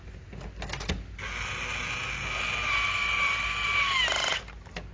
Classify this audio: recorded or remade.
recorded